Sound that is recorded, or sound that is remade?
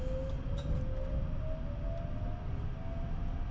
recorded